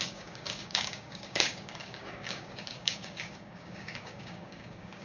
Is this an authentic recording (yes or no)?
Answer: no